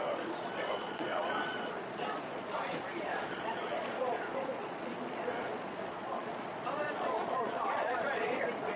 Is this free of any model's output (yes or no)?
no